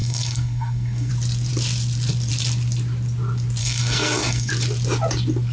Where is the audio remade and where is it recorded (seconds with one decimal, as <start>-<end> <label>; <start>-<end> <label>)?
0.0-1.1 remade; 1.1-3.6 recorded; 3.6-4.5 remade; 4.5-5.5 recorded

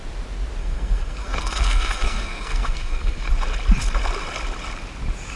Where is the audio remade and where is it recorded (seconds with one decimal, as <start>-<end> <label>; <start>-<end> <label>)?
0.0-0.6 recorded; 0.6-3.3 remade; 3.3-5.4 recorded

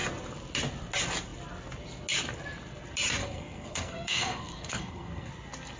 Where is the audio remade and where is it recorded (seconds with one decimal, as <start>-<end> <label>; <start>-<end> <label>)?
0.0-3.2 recorded; 3.2-5.3 remade; 5.3-5.8 recorded

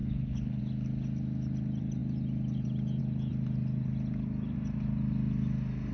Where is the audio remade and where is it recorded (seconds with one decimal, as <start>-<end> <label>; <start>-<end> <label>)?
0.0-0.6 remade; 0.6-5.9 recorded

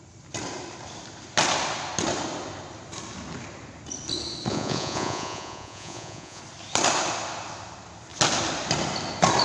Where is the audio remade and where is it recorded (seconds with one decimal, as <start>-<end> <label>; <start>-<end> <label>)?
0.0-4.5 recorded; 4.5-6.4 remade; 6.4-9.4 recorded

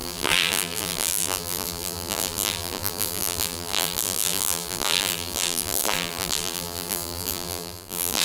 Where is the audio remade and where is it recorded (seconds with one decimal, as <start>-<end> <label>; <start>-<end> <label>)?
0.0-8.2 remade

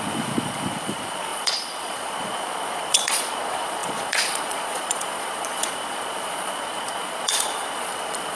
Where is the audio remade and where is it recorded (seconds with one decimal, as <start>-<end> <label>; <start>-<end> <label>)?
0.0-8.4 remade

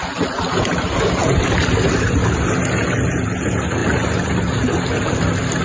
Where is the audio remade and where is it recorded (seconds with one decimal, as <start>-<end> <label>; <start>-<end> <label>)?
0.0-5.6 recorded